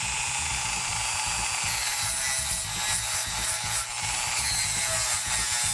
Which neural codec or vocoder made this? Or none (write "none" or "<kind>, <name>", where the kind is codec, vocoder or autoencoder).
none